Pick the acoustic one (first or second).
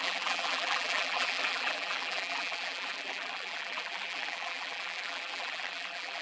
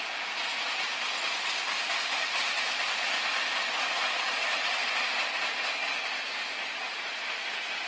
second